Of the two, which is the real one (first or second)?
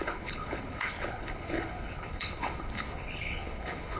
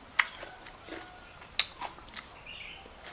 second